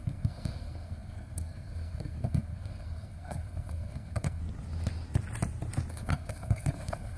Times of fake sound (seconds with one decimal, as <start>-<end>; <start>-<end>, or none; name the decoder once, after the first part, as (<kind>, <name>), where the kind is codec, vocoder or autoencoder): 0.0-4.4 (codec, SNAC); 5.9-7.2